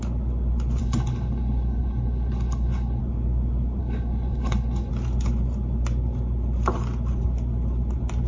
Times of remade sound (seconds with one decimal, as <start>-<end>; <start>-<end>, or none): 0.8-3.0; 3.8-4.9